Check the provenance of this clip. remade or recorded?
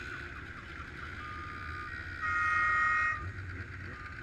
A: recorded